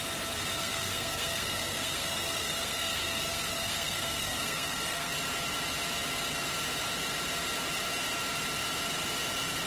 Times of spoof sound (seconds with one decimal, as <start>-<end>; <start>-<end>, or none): 0.6-5.1